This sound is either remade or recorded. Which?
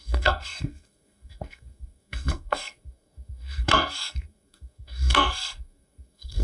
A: remade